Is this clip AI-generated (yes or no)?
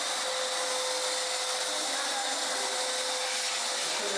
no